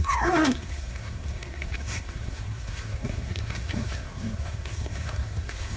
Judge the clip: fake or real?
fake